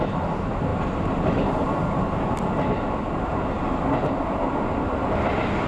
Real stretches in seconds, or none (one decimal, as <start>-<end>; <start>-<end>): 0.0-5.7